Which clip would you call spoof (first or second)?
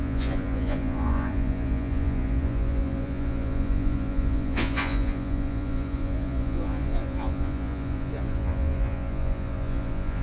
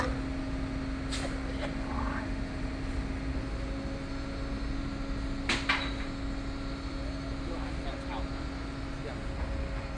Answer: first